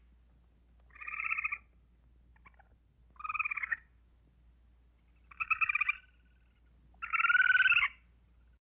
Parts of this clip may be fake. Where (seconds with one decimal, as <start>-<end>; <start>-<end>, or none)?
none